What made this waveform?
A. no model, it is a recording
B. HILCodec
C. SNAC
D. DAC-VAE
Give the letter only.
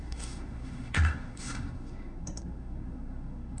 C